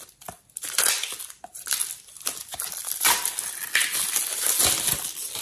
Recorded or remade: recorded